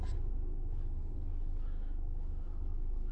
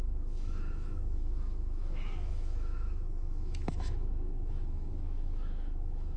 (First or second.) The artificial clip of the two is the second